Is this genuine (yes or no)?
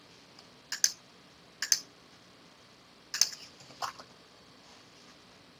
yes